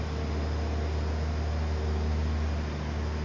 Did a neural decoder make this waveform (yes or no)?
no